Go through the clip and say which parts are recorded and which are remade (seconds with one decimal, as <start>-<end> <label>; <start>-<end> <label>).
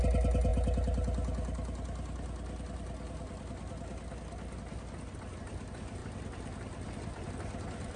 0.0-8.0 recorded